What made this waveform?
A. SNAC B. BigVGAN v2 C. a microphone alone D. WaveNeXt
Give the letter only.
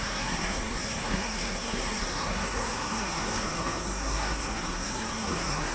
A